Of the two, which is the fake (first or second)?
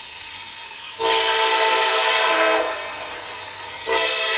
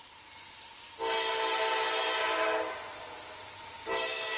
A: first